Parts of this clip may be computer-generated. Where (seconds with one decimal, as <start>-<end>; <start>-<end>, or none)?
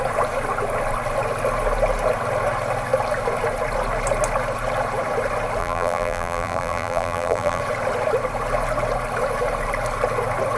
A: 5.6-7.6